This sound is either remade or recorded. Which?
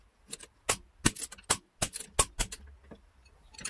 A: recorded